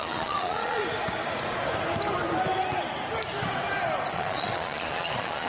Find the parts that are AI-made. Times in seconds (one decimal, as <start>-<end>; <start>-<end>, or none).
0.0-0.8; 4.1-5.5